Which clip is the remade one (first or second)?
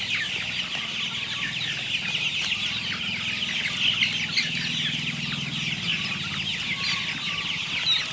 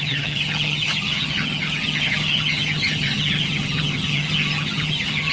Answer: second